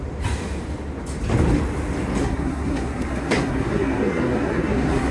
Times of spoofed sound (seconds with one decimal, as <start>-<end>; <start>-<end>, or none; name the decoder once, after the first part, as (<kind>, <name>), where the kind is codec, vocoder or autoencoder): 2.2-5.1 (codec, SNAC)